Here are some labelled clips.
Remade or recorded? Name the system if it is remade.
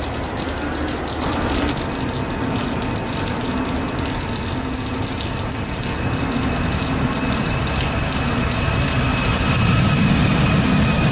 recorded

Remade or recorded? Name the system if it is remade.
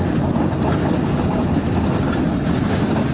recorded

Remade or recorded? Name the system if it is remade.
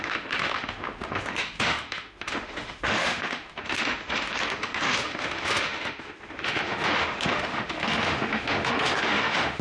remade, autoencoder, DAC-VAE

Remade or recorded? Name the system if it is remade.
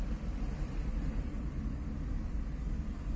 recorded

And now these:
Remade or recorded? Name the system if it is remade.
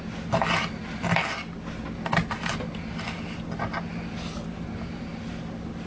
recorded